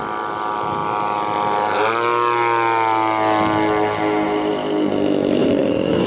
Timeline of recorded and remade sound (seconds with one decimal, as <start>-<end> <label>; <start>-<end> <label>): 0.0-5.4 recorded; 5.4-6.1 remade